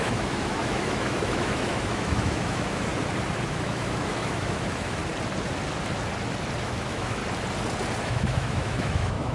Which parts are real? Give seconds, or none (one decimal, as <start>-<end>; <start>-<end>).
2.9-3.5; 5.0-6.6; 7.2-8.0